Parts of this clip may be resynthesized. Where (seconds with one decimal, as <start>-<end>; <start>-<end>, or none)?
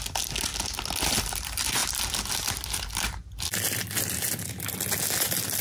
none